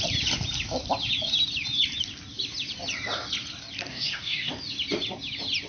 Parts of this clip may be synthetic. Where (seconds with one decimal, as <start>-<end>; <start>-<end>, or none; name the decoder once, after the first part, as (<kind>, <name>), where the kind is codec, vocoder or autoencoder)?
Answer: 3.9-4.5 (codec, SNAC)